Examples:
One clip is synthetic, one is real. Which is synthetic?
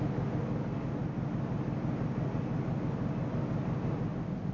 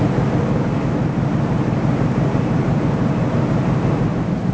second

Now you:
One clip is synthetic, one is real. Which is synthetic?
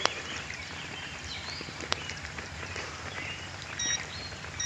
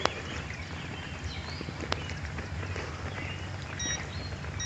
first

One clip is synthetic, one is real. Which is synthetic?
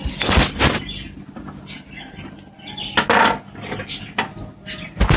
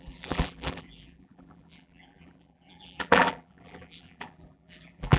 second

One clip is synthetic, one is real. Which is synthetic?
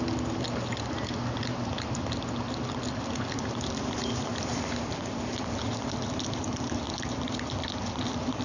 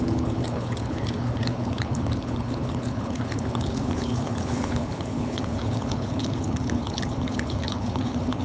second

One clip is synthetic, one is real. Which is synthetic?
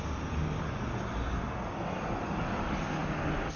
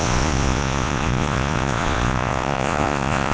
second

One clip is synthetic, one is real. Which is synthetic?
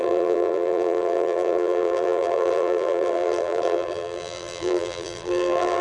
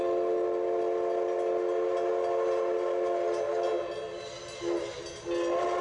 first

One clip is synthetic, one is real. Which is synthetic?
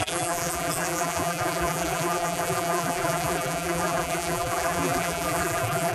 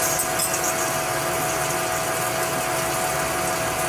first